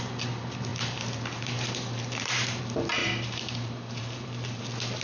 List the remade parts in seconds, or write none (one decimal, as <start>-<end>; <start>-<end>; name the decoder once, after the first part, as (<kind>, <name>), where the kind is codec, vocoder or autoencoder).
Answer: 0.7-2.6 (vocoder, BigVGAN v2); 3.0-4.6

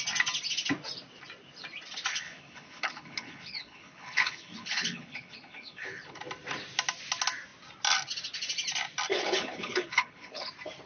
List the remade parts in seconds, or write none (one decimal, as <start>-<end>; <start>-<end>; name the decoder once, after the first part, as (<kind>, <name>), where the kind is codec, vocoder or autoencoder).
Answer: 2.1-6.2 (codec, HILCodec); 9.1-10.5

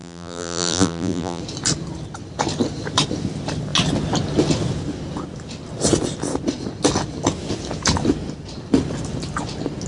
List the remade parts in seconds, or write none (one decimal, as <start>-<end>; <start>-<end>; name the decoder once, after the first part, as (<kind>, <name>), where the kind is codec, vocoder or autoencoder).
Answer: 0.0-1.4 (vocoder, BigVGAN v2)

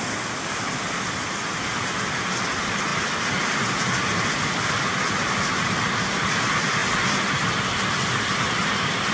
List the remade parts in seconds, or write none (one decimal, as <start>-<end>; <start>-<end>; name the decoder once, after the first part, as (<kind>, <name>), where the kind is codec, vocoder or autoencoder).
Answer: none

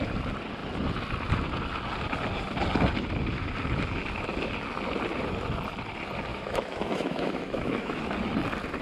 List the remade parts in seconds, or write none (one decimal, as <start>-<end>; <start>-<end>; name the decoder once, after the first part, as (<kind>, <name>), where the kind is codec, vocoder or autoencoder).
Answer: 6.3-8.0 (autoencoder, DAC-VAE)

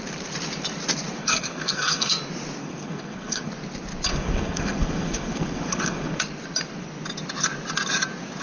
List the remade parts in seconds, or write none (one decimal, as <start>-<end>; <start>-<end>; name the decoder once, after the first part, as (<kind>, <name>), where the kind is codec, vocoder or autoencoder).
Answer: 1.2-2.2 (codec, SNAC); 2.6-3.5; 4.1-6.2

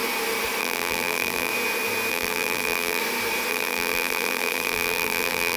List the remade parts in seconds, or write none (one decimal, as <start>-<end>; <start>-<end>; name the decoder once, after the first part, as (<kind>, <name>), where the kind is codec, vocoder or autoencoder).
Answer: 0.6-1.5 (vocoder, BigVGAN v2); 2.1-3.0; 3.5-5.6

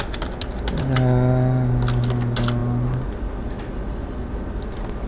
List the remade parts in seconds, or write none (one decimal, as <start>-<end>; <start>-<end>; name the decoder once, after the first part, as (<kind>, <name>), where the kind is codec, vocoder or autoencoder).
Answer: none